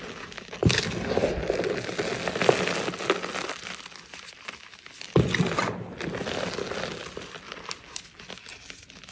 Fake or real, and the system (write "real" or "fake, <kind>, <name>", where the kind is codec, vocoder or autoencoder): real